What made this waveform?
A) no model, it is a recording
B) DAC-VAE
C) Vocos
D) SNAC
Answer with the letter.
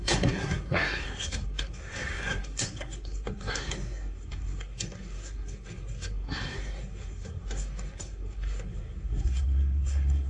D